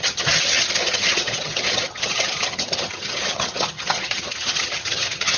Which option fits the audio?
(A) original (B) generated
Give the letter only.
B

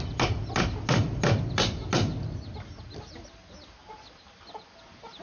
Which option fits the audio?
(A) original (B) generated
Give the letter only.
A